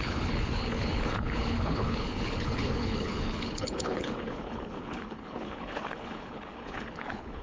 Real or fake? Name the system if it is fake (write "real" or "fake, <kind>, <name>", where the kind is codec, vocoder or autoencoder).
fake, codec, HILCodec